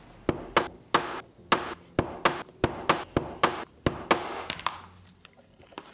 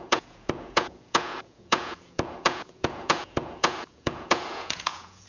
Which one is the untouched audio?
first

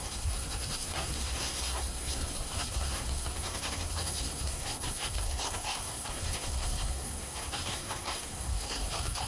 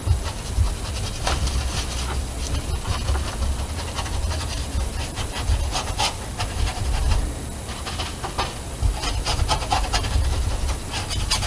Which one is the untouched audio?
second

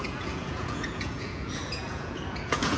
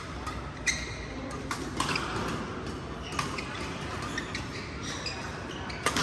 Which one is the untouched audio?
second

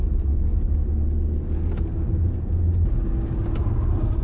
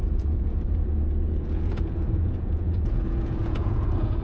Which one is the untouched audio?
first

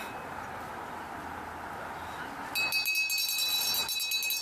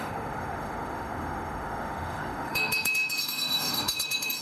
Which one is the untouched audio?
first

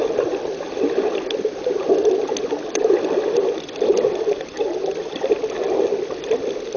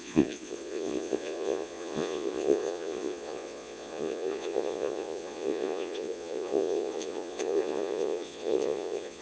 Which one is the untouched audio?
first